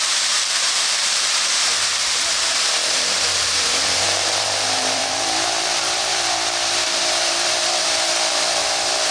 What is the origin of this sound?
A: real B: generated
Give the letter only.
B